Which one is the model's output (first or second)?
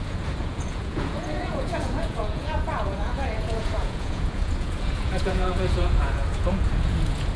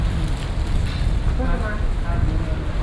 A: first